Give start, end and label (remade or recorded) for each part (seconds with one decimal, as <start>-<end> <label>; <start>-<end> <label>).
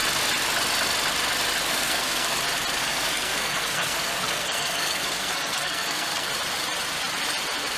0.0-1.7 recorded; 1.7-2.4 remade; 2.4-2.8 recorded; 2.8-6.3 remade; 6.3-7.8 recorded